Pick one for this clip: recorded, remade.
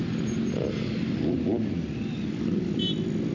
recorded